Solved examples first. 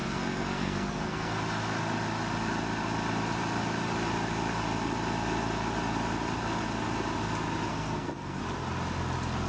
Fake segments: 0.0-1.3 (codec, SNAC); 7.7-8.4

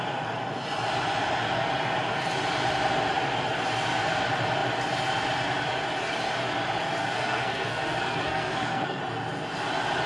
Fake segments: 7.0-9.0 (codec, SNAC)

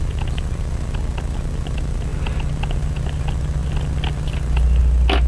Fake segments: none